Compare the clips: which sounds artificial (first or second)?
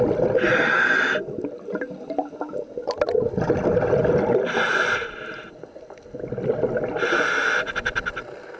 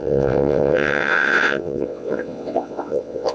second